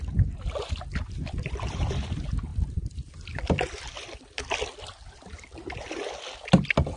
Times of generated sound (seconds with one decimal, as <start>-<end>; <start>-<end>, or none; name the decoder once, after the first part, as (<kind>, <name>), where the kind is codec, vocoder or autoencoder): 2.5-5.8 (vocoder, BigVGAN v2)